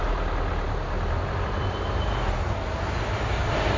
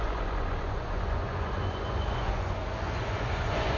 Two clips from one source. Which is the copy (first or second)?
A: second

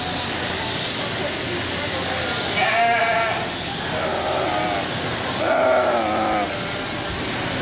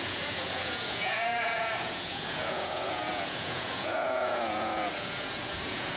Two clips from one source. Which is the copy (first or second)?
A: second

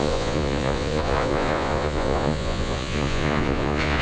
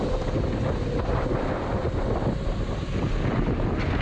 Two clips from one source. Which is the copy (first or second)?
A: first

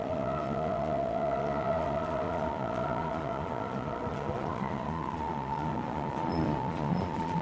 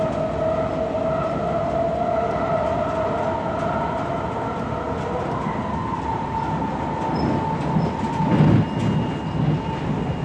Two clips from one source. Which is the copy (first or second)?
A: first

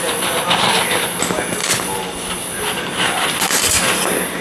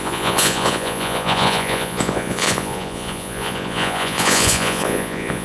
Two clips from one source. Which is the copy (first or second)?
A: second